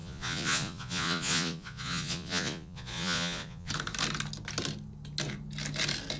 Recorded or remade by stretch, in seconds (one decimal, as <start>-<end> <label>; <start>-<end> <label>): 0.0-3.7 remade; 3.7-6.2 recorded